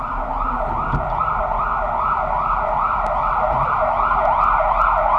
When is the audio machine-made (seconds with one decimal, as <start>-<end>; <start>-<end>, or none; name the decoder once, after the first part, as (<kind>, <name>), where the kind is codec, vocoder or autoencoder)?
none